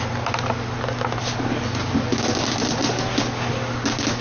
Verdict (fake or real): real